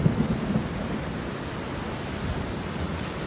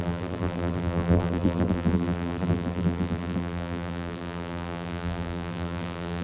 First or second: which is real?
first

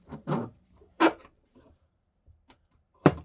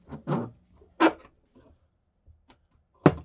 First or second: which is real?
second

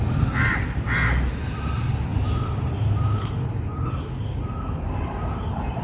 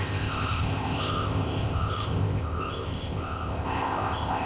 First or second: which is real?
first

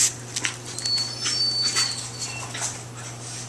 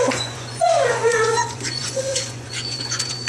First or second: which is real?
first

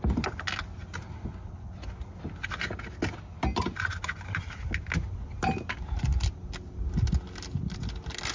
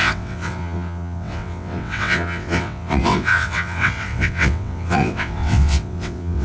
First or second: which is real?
first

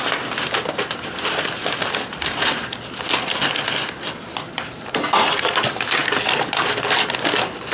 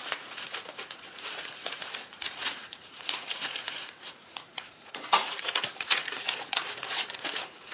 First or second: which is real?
first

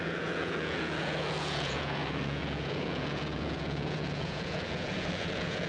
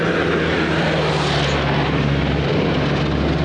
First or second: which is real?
second